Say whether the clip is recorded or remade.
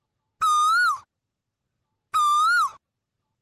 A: recorded